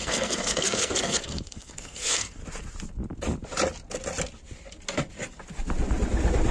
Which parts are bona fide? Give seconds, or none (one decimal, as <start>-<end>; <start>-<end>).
2.4-6.5